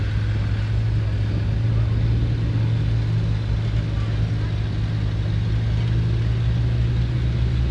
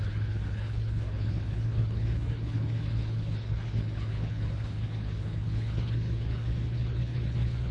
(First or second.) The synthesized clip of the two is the second